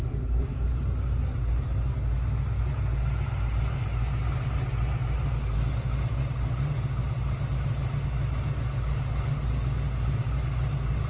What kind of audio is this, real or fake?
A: real